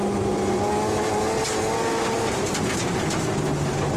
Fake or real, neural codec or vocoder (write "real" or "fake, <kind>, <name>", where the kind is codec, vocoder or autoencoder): real